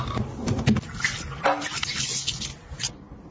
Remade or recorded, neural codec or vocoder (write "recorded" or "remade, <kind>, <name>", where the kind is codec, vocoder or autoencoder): recorded